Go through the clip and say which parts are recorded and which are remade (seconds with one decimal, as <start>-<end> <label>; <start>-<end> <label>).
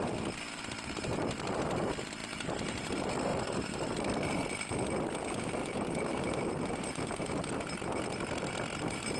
0.0-2.2 recorded; 2.2-2.9 remade; 2.9-3.3 recorded; 3.3-3.9 remade; 3.9-6.1 recorded; 6.1-7.5 remade; 7.5-9.2 recorded